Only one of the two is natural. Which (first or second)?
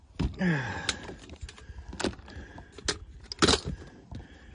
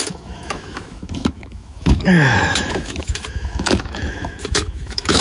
first